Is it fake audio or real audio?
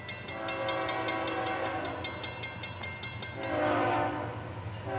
real